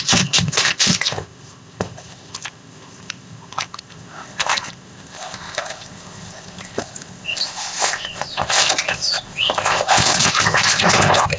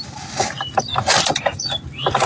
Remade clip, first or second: first